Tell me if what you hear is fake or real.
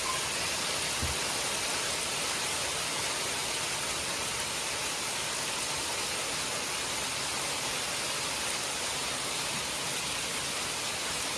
real